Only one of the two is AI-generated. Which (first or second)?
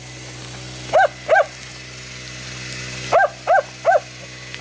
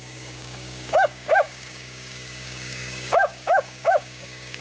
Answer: second